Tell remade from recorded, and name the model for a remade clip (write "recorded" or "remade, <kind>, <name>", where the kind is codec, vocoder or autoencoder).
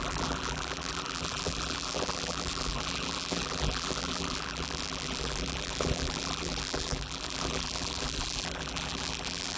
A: remade, vocoder, BigVGAN v2